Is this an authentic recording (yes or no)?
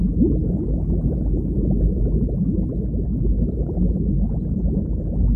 yes